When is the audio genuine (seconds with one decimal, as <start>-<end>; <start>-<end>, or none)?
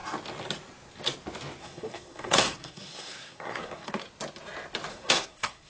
0.0-1.6; 3.9-4.9